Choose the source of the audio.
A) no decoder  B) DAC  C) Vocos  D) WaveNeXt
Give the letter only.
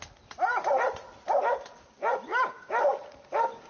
A